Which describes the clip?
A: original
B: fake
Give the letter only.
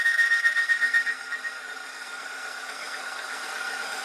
B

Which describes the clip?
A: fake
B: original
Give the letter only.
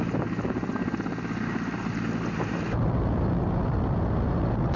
B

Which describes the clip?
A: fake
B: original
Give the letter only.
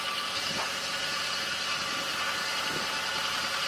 B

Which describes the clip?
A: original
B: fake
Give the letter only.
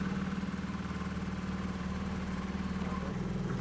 B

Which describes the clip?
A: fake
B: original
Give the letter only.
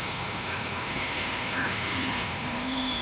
A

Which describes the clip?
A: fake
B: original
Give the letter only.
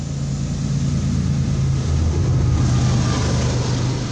B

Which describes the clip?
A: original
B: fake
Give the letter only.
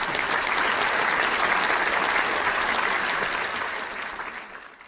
A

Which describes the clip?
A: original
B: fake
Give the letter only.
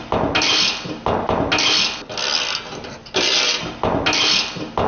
A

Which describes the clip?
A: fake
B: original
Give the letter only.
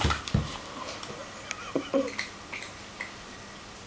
B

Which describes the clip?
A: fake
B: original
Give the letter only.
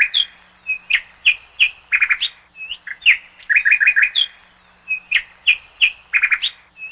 B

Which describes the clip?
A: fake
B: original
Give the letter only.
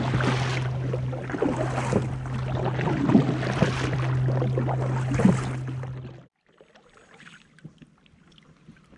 B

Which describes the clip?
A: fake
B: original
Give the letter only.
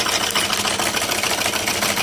B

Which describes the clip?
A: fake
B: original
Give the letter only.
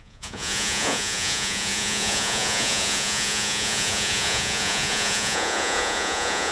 A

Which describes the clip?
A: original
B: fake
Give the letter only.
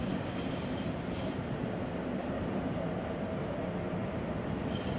A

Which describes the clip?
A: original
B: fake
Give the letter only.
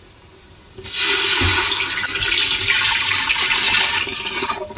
A